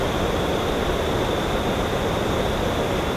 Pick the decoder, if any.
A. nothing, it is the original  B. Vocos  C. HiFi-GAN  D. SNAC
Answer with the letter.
A